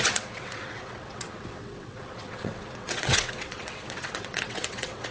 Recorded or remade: remade